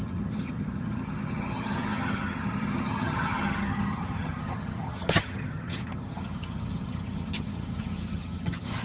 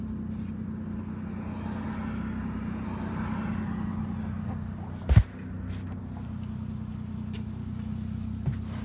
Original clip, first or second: second